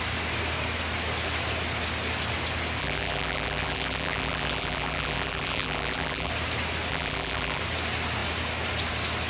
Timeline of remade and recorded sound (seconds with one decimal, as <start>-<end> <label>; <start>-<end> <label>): 0.0-2.8 recorded; 2.8-6.3 remade; 6.3-6.9 recorded; 6.9-7.6 remade; 7.6-9.3 recorded